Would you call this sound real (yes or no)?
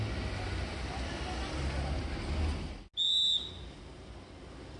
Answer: yes